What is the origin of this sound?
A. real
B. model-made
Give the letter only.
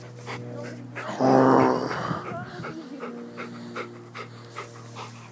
A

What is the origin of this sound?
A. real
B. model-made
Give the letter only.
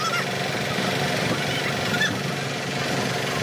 A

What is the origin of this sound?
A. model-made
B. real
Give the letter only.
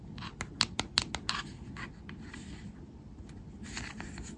B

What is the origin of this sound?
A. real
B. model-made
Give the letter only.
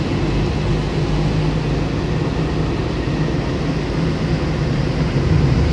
A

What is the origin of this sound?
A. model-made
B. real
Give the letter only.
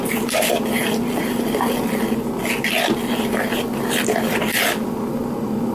B